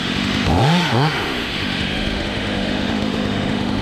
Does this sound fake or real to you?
fake